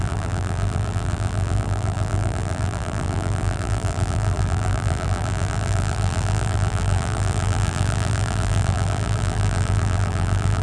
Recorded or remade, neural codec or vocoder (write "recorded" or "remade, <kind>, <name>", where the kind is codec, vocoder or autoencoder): remade, vocoder, BigVGAN v2